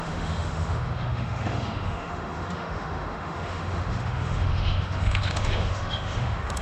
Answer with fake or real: fake